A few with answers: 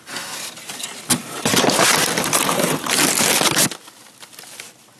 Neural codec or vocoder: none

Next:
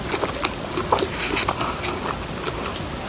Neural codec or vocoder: none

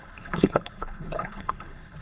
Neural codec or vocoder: codec, HILCodec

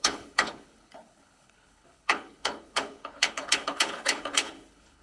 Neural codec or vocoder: codec, HILCodec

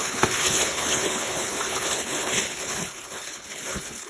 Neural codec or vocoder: codec, HILCodec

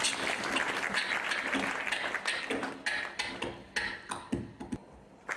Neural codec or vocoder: none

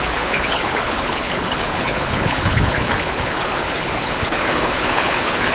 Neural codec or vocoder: codec, HILCodec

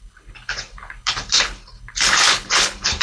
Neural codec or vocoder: codec, HILCodec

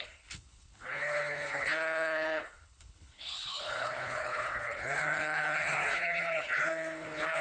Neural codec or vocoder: codec, HILCodec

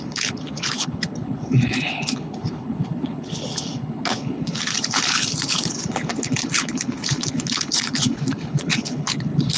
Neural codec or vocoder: codec, HILCodec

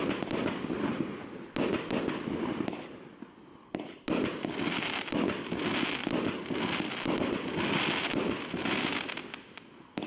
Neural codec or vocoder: none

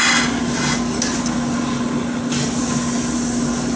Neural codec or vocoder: none